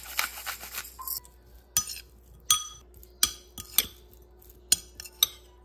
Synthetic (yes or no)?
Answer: no